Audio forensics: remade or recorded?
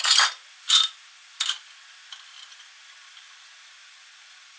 recorded